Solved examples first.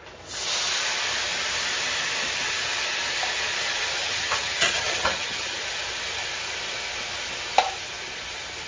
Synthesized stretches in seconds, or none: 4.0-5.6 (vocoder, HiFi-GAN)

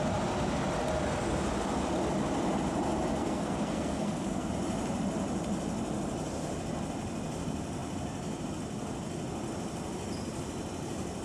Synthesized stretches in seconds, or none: 3.2-4.5 (codec, SNAC)

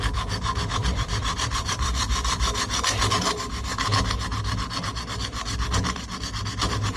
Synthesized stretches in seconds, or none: 0.8-3.0 (vocoder, BigVGAN v2)

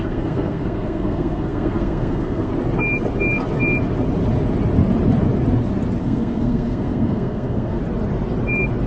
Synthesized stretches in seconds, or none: 0.0-2.5 (codec, SNAC); 6.0-7.8

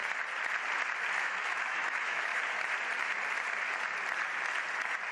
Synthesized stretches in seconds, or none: 1.2-2.3 (autoencoder, DAC-VAE)